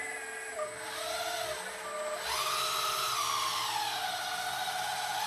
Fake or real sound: real